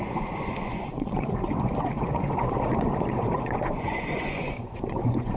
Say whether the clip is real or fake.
fake